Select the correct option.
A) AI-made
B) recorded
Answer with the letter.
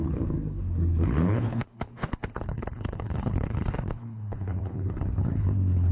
A